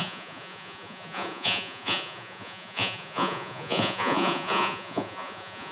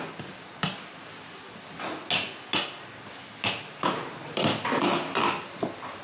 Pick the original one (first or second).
second